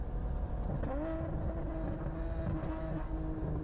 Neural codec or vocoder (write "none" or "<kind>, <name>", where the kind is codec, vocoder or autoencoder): none